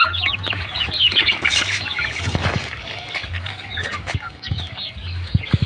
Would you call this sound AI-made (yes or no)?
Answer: yes